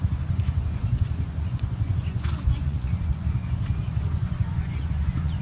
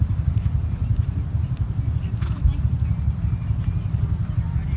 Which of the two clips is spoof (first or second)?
first